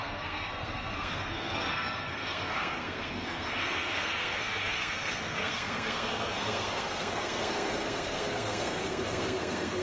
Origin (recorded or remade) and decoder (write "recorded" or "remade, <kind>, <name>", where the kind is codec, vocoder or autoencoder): remade, codec, SNAC